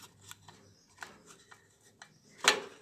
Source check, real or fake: real